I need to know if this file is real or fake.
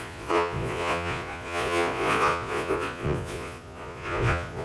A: fake